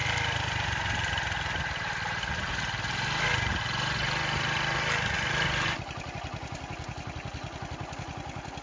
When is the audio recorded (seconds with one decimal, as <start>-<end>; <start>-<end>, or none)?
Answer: 0.0-8.6